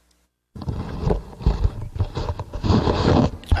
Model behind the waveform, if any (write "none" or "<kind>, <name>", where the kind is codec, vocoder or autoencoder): none